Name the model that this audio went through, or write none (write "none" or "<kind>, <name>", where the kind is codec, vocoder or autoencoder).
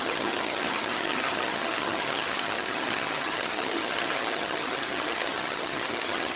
vocoder, HiFi-GAN